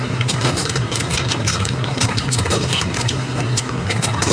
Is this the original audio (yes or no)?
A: no